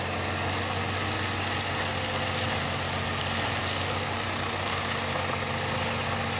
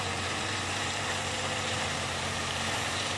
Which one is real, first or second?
first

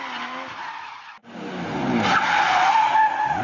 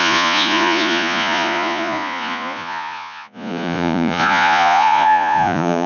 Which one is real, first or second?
first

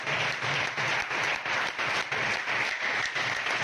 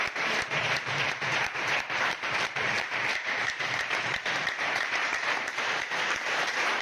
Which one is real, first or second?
first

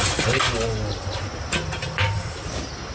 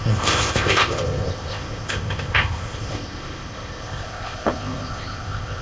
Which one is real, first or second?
first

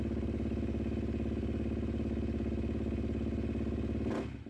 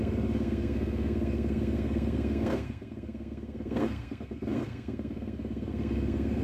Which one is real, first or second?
first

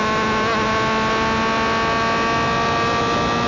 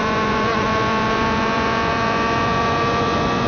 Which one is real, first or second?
first